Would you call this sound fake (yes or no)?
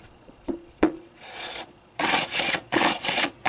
yes